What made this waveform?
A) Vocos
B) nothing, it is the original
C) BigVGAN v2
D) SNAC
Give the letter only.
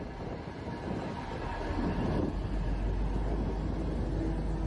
B